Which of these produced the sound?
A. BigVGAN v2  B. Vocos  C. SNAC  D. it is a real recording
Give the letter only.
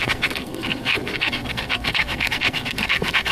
C